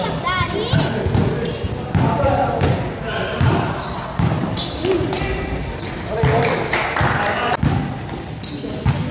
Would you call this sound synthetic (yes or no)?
no